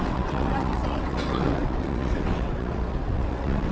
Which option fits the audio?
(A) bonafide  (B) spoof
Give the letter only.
B